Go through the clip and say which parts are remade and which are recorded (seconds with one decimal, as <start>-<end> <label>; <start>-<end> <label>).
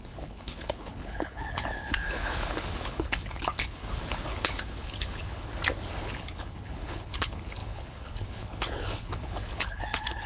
0.0-5.5 remade; 5.5-6.1 recorded; 6.1-10.3 remade